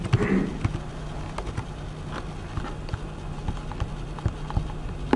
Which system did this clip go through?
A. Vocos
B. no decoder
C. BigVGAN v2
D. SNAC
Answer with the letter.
B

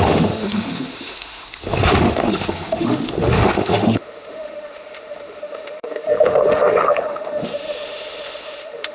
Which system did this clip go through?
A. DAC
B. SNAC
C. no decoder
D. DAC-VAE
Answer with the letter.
D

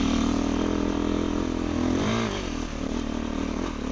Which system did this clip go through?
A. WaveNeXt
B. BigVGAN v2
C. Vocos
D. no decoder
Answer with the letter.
D